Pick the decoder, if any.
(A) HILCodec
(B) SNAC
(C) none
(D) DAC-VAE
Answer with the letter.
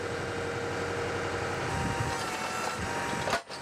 C